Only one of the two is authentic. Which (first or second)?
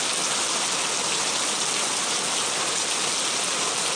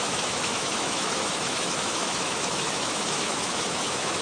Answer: first